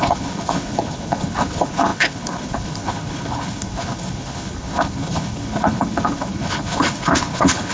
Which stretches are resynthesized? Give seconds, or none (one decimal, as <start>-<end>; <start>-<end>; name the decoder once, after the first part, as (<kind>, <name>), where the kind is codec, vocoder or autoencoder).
0.0-7.7 (codec, HILCodec)